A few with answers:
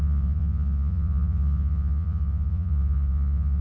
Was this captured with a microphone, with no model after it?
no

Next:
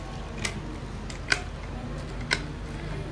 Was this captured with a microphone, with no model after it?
yes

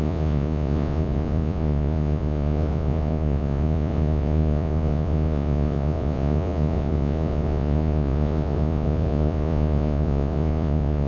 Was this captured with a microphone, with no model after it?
no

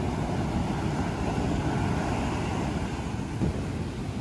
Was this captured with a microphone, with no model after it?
yes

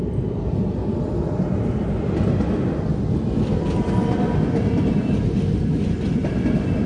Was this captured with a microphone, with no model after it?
yes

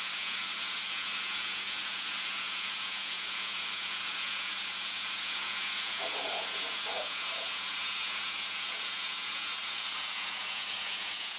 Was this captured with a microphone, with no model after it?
no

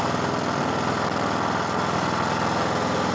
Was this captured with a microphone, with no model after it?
yes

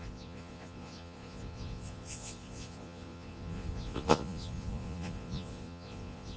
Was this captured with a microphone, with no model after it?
no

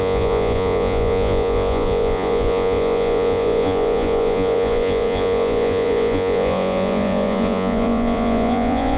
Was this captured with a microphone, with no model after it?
no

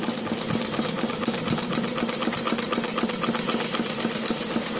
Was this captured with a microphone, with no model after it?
yes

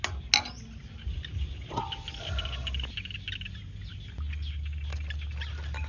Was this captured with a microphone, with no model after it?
yes